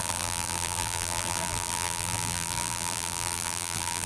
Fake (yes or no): yes